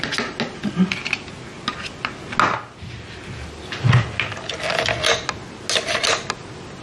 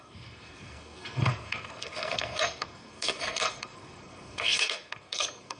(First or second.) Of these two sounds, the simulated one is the second